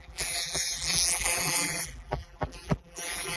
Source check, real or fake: fake